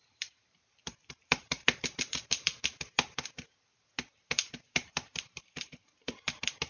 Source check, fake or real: fake